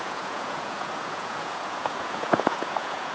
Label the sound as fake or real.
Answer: fake